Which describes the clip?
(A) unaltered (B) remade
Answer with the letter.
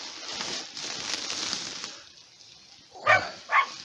A